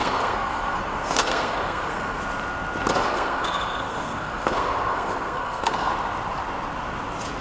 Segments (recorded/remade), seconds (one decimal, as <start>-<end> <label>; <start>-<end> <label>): 0.0-2.2 remade; 2.2-3.0 recorded; 3.0-5.9 remade; 5.9-7.4 recorded